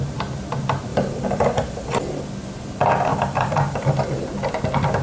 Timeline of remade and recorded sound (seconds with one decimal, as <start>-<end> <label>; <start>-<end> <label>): 0.0-0.9 recorded; 0.9-2.2 remade; 2.2-3.1 recorded; 3.1-4.2 remade; 4.2-5.0 recorded